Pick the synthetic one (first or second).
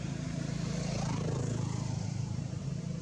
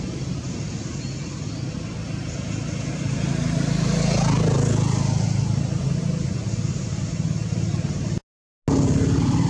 first